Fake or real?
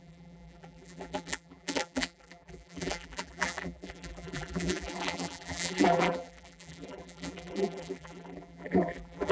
fake